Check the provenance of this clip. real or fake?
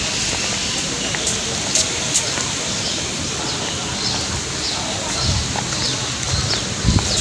real